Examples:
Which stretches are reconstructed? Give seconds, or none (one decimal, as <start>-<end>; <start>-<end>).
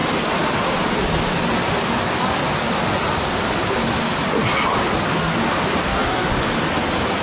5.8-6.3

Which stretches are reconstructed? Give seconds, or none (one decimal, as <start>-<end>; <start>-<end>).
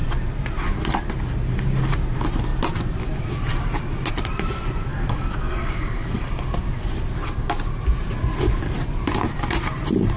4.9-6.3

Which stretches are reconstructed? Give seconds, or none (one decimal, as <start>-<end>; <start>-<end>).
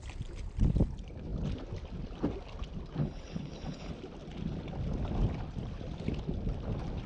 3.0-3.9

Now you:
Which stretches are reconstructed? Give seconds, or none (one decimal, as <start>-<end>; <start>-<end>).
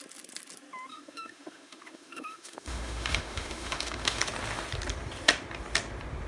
0.9-4.2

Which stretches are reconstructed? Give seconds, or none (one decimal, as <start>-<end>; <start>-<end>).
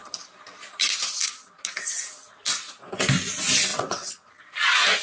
3.7-4.3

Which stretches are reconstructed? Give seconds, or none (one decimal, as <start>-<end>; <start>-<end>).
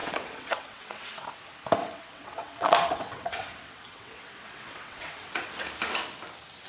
0.0-1.3; 1.8-5.6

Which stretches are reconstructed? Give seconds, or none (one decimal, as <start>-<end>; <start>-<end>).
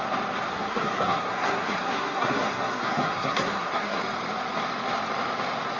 0.5-4.0